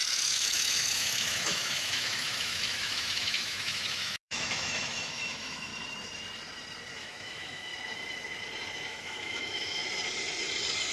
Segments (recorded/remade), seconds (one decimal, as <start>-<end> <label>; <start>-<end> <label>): 0.0-5.7 remade; 5.7-7.0 recorded; 7.0-7.7 remade; 7.7-8.9 recorded; 8.9-9.8 remade; 9.8-10.9 recorded

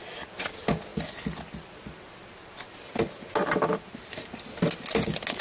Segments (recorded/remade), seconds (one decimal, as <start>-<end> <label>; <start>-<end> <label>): 0.0-5.4 recorded

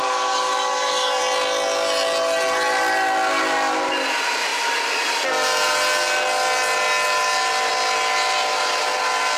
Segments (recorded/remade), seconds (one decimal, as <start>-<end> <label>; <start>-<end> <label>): 0.0-1.2 remade; 1.2-9.4 recorded

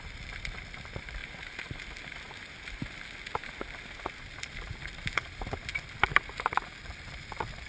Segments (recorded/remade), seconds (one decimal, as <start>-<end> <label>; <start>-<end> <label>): 0.0-1.2 remade; 1.2-4.2 recorded; 4.2-6.0 remade; 6.0-6.8 recorded; 6.8-7.7 remade

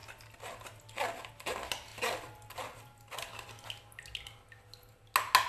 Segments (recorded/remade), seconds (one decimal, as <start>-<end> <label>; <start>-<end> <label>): 0.0-1.9 recorded; 1.9-3.3 remade; 3.3-5.5 recorded

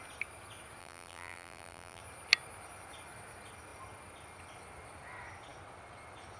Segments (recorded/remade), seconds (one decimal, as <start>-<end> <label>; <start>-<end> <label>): 0.0-0.8 recorded; 0.8-2.0 remade; 2.0-6.4 recorded